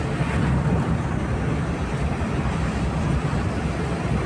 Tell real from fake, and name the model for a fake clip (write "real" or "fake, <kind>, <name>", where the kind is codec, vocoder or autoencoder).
real